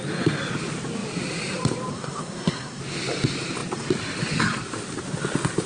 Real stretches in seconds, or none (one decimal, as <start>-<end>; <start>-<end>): 0.0-1.9; 2.8-5.7